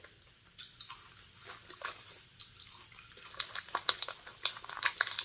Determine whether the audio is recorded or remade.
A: recorded